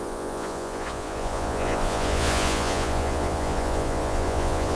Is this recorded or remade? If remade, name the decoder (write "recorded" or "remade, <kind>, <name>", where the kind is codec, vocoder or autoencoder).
remade, vocoder, Vocos